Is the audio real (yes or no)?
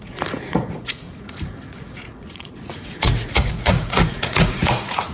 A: no